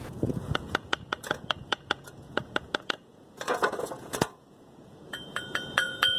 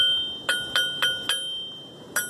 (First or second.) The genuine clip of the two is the second